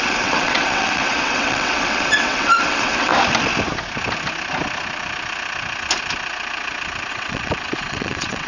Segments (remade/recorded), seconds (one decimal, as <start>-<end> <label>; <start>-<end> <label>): 0.0-3.1 remade; 3.1-7.1 recorded; 7.1-8.5 remade